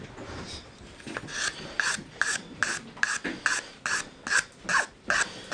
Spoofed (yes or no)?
no